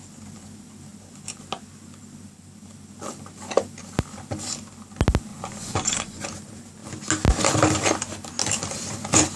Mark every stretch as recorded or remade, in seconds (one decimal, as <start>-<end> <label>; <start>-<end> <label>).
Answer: 0.0-5.3 recorded; 5.3-6.2 remade; 6.2-9.4 recorded